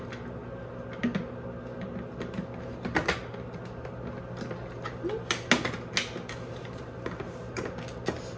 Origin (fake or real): real